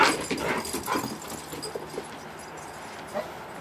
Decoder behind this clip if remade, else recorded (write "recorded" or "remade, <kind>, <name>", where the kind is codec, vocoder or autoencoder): recorded